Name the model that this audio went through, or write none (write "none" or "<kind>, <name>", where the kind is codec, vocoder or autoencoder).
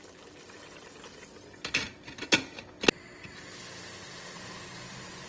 none